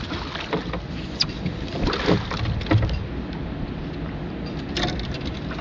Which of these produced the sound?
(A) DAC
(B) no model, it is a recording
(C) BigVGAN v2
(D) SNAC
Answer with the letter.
B